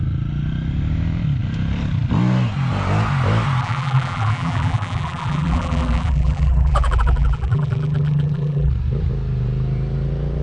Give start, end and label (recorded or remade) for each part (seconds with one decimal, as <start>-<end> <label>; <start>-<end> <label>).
0.0-3.6 recorded; 3.6-8.7 remade; 8.7-10.4 recorded